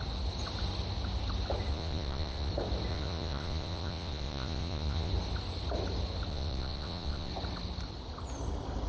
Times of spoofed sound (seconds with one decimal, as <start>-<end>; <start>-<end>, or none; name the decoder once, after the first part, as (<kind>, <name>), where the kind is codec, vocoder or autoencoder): 1.7-2.5 (vocoder, Vocos); 2.9-5.1; 6.3-7.3